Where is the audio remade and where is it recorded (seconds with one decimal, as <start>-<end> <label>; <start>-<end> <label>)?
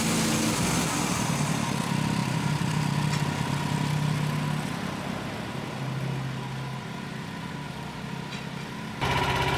0.0-2.2 recorded; 2.2-2.9 remade; 2.9-9.6 recorded